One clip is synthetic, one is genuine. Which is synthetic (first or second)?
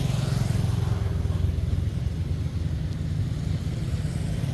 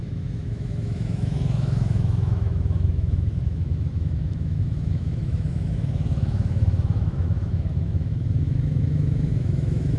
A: second